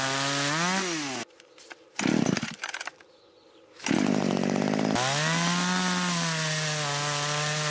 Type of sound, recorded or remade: recorded